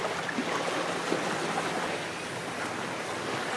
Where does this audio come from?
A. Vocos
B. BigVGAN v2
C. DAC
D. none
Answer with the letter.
D